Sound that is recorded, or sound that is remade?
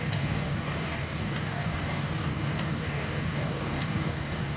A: remade